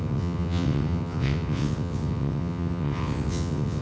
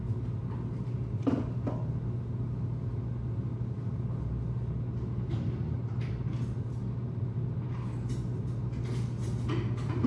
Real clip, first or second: second